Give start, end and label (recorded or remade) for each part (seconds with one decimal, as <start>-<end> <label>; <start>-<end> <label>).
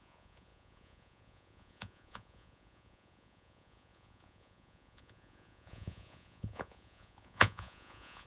0.0-8.3 remade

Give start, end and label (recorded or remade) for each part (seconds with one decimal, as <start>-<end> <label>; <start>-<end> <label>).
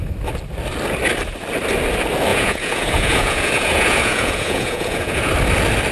0.0-2.3 recorded; 2.3-5.3 remade; 5.3-5.9 recorded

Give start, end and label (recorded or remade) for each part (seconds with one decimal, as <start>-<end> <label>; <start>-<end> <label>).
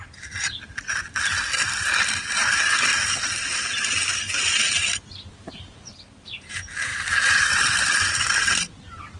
0.0-9.2 recorded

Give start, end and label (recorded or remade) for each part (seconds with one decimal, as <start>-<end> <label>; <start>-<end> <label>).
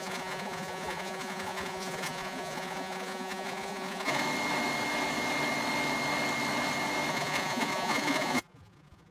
0.0-4.2 remade; 4.2-7.1 recorded; 7.1-9.1 remade